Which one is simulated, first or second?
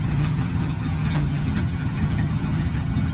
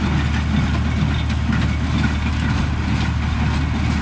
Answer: first